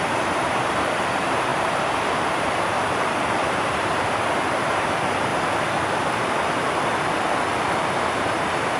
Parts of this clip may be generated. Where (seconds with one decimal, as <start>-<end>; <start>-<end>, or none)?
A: 0.0-5.3; 8.0-8.8